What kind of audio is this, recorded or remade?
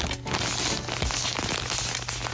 recorded